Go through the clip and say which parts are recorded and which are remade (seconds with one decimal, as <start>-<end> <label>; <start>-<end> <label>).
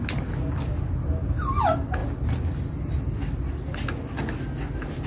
0.0-5.1 recorded